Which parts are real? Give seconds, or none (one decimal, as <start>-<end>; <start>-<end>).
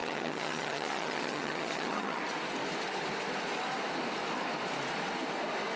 2.2-5.8